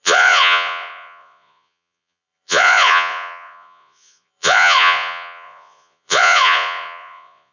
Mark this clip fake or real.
fake